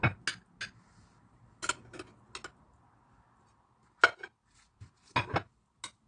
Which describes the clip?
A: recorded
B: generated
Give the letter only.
A